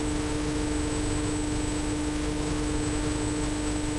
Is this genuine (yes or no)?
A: no